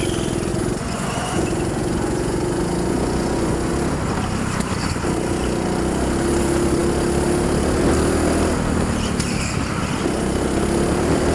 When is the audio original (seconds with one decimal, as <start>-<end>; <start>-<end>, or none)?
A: 0.0-0.5; 3.7-11.3